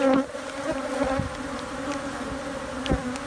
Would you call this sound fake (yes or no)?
no